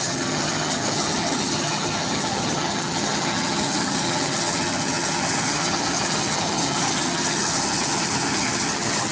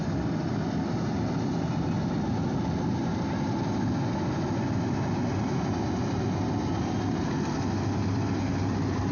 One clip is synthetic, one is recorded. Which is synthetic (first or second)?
first